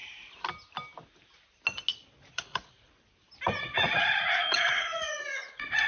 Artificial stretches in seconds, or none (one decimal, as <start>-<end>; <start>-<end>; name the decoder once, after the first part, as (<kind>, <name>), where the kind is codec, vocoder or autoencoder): 2.3-2.9 (vocoder, Vocos); 3.6-5.9